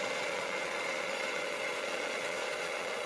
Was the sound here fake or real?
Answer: fake